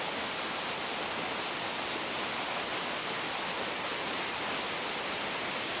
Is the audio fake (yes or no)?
no